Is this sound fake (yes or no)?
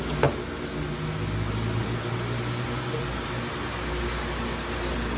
no